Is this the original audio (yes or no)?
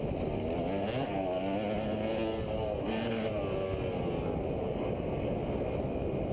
yes